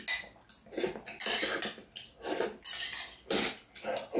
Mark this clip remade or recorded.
recorded